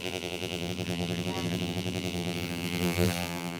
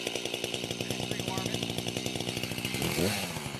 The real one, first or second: second